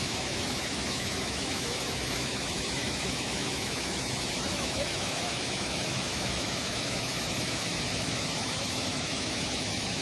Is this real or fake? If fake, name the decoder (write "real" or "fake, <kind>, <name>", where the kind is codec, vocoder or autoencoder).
fake, autoencoder, DAC-VAE